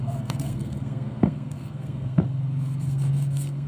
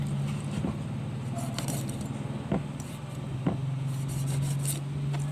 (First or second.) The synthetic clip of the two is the first